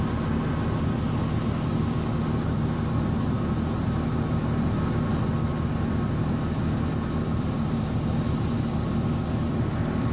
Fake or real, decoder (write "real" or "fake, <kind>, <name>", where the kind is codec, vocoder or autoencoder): real